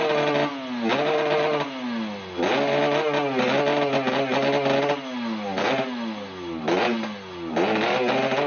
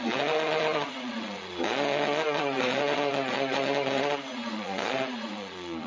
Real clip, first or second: first